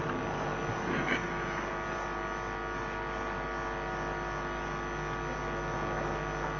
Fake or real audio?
real